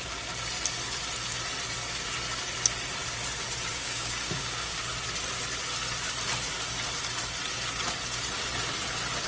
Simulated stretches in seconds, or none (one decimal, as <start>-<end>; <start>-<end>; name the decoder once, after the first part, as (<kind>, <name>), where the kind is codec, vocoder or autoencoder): 3.7-4.9 (codec, DAC)